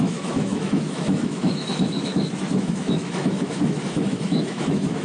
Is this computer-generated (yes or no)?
yes